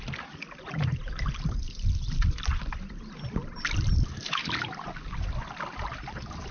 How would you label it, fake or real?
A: real